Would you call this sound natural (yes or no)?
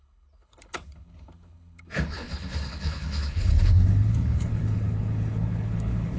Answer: no